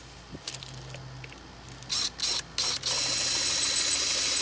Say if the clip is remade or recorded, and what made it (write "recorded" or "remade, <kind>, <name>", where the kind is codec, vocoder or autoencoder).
recorded